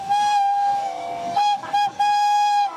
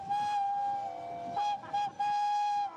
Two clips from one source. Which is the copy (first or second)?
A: first